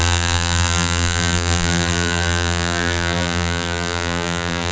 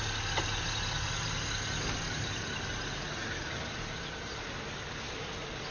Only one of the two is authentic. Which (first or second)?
second